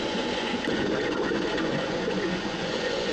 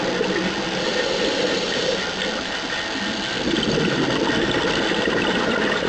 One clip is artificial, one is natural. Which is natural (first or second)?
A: second